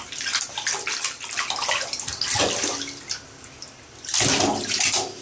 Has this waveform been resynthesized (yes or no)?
no